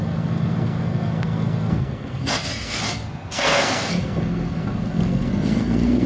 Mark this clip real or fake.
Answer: fake